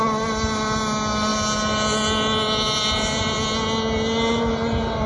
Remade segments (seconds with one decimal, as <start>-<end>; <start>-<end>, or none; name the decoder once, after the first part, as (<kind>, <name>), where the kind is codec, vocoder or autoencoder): none